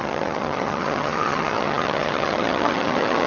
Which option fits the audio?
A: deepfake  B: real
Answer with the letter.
A